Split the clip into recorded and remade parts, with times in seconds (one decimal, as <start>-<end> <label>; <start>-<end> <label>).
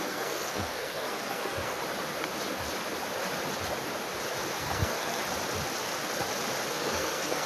0.0-1.8 remade; 1.8-4.6 recorded; 4.6-5.2 remade; 5.2-6.7 recorded; 6.7-7.5 remade